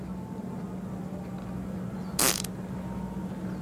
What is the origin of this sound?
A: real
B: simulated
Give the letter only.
A